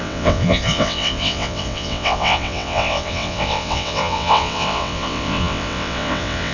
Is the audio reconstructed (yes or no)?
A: yes